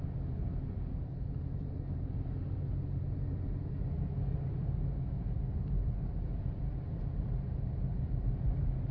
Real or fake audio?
real